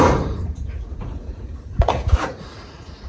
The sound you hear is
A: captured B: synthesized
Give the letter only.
B